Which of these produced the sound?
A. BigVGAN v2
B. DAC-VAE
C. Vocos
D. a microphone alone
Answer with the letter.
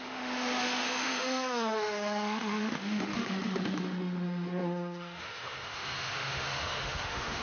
B